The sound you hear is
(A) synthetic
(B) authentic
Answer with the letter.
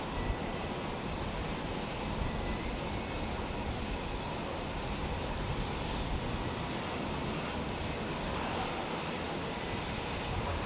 B